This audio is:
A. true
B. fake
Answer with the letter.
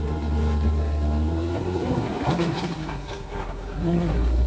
B